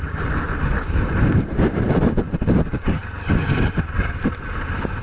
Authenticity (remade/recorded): remade